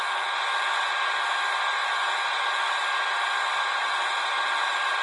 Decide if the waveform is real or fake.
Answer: real